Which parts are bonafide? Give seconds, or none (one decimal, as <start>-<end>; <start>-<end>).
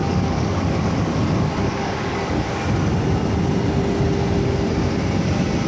2.5-5.7